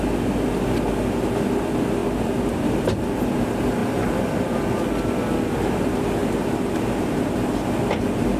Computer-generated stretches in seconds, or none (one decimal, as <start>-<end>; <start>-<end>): 2.0-2.8; 3.8-4.6